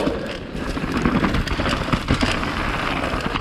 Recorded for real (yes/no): yes